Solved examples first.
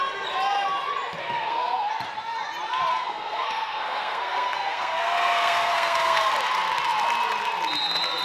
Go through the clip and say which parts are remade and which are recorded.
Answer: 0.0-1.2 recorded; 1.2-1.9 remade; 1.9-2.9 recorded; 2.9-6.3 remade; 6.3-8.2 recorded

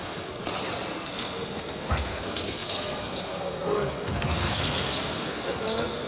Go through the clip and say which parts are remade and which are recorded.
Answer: 0.0-0.4 remade; 0.4-0.9 recorded; 0.9-6.1 remade

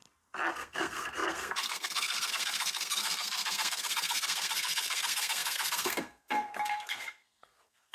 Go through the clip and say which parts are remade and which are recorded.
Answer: 0.0-0.5 recorded; 0.5-7.9 remade

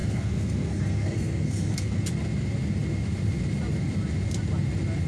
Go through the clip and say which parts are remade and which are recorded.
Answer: 0.0-2.0 remade; 2.0-5.1 recorded

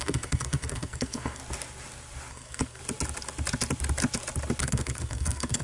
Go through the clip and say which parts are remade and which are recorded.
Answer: 0.0-1.4 remade; 1.4-2.3 recorded; 2.3-2.8 remade; 2.8-4.6 recorded; 4.6-5.6 remade

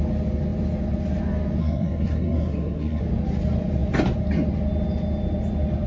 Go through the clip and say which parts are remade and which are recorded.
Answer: 0.0-1.6 recorded; 1.6-3.0 remade; 3.0-5.9 recorded

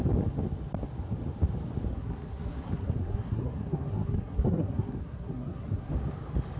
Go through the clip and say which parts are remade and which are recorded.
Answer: 0.0-1.9 recorded; 1.9-5.9 remade; 5.9-6.6 recorded

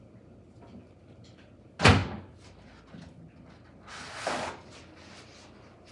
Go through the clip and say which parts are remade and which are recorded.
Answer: 0.0-5.9 recorded